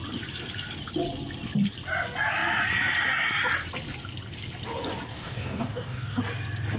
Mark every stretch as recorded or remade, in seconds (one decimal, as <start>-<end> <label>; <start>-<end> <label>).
0.0-5.1 recorded; 5.1-6.2 remade; 6.2-6.8 recorded